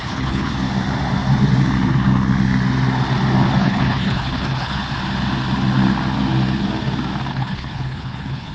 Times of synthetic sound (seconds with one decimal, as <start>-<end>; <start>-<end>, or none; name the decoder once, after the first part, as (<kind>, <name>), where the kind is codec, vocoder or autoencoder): 0.0-0.5 (codec, HILCodec); 3.6-4.8; 7.3-8.5

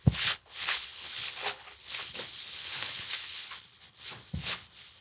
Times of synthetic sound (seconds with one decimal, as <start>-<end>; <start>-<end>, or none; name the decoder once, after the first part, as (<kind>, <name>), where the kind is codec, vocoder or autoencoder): 0.0-5.0 (codec, HILCodec)